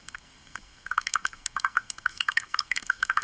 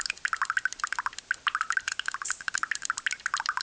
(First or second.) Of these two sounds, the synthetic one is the first